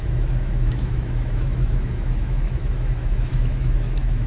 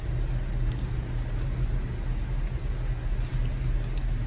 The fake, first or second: first